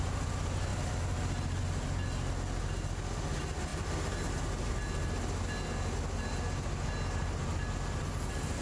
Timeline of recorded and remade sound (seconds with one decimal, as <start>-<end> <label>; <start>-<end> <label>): 0.0-0.7 recorded; 0.7-1.6 remade; 1.6-3.7 recorded; 3.7-4.7 remade; 4.7-8.6 recorded